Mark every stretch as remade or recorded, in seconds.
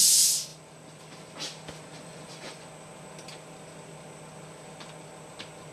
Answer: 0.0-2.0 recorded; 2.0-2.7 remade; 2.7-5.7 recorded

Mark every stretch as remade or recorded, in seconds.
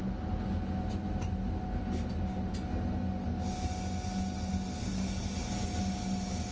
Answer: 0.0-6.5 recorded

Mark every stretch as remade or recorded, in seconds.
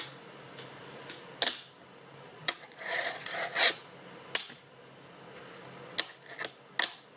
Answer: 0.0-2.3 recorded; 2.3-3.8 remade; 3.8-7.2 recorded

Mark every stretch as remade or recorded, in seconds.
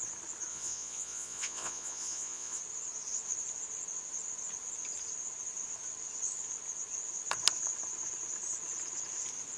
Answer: 0.0-0.5 recorded; 0.5-2.6 remade; 2.6-9.6 recorded